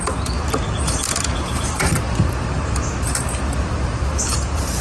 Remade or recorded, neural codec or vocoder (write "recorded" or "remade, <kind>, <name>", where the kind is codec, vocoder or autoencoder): recorded